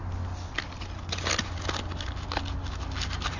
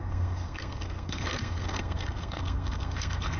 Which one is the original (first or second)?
first